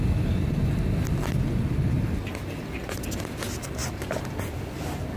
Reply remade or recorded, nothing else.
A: recorded